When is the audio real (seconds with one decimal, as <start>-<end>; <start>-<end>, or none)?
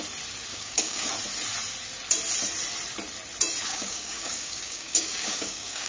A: 0.0-0.5; 1.1-3.7